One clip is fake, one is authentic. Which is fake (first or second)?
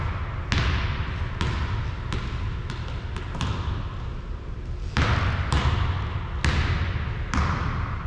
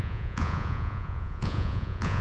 second